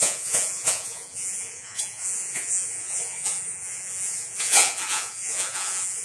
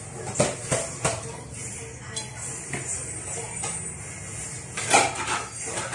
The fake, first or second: first